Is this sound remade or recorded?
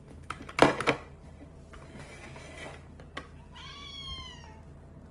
recorded